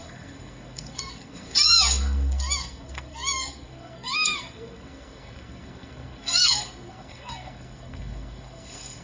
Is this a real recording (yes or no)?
no